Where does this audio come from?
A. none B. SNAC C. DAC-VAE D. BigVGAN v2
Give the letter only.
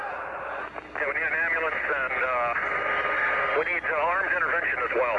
A